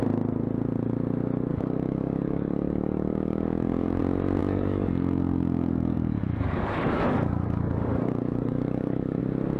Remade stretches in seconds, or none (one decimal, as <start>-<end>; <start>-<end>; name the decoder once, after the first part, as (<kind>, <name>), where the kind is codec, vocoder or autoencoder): 1.5-4.0 (codec, DAC); 4.4-9.2